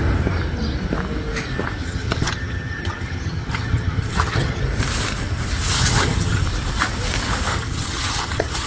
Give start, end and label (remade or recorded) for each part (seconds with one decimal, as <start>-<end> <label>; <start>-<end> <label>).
0.0-1.8 recorded; 1.8-4.6 remade; 4.6-5.7 recorded; 5.7-6.4 remade; 6.4-7.5 recorded; 7.5-8.7 remade